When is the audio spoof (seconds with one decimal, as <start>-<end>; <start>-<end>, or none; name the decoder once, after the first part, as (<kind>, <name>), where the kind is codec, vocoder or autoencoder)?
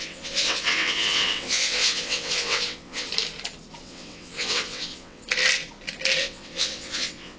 0.0-3.1 (vocoder, WaveNeXt); 3.8-5.2; 6.2-7.4